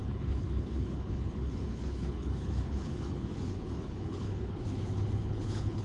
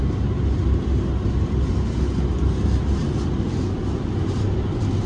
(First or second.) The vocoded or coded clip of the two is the first